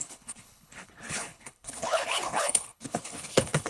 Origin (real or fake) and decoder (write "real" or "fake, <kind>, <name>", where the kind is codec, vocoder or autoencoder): fake, codec, HILCodec